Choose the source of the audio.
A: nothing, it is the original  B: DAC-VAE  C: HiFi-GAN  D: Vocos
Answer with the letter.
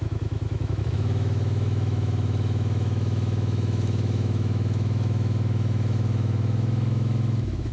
B